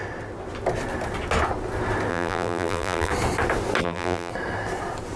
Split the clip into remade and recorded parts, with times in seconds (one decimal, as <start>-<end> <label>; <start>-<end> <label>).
0.0-2.1 recorded; 2.1-3.1 remade; 3.1-3.8 recorded; 3.8-4.3 remade; 4.3-5.2 recorded